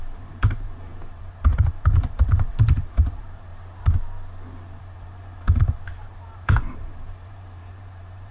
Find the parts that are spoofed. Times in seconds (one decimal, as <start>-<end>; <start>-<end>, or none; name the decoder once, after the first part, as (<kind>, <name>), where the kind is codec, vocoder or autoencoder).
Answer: 0.0-3.5 (vocoder, BigVGAN v2); 4.8-8.3